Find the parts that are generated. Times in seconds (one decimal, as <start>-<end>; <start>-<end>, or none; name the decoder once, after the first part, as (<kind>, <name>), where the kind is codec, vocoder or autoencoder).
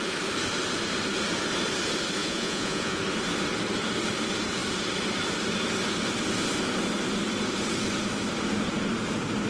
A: 2.2-3.0 (vocoder, Vocos)